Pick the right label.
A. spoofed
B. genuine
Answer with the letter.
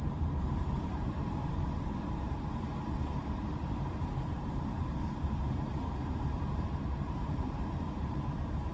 A